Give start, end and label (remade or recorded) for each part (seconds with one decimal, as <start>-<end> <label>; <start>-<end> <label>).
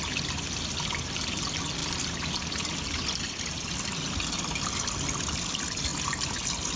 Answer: 0.0-6.8 recorded